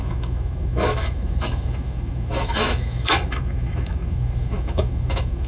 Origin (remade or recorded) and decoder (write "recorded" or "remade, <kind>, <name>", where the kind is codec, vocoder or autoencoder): remade, autoencoder, DAC-VAE